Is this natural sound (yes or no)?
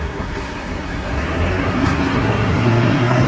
no